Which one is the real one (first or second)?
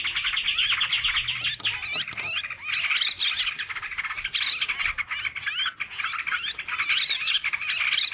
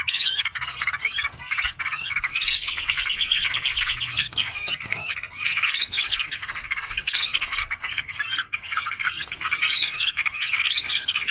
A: first